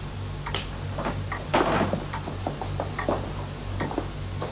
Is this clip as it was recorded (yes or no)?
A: yes